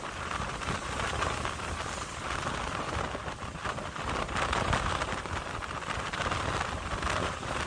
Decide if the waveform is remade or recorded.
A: recorded